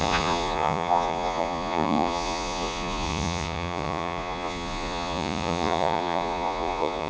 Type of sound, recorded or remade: remade